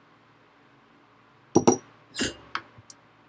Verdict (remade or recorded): recorded